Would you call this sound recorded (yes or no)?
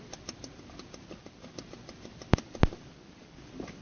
yes